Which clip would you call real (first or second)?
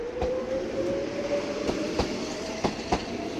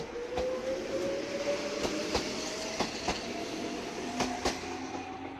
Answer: second